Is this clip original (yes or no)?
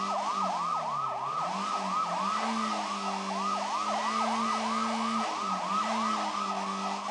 yes